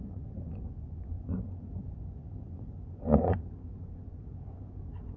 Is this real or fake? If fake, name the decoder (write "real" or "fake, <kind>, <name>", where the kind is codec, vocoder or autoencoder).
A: fake, vocoder, Vocos